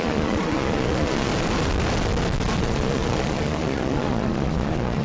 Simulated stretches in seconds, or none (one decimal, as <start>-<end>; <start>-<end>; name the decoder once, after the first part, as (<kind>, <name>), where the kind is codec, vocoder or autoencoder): 0.0-1.3 (vocoder, Vocos); 2.6-5.0